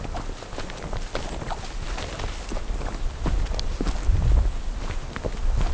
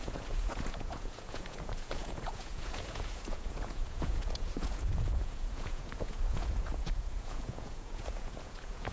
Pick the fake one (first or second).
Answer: second